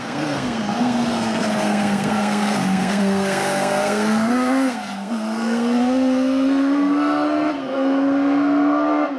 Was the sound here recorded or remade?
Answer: remade